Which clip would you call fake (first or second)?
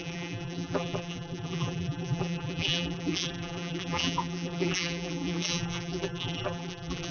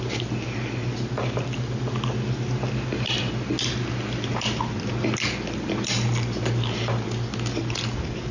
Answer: first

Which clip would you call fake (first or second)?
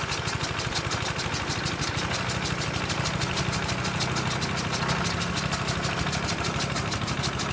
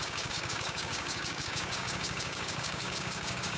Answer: second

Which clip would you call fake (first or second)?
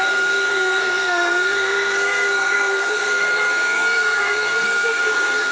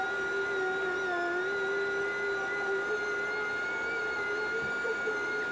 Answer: first